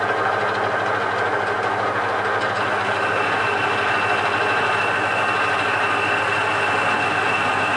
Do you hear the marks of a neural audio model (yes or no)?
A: no